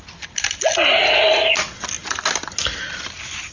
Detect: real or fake real